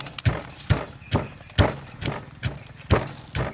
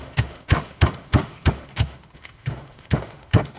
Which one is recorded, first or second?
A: first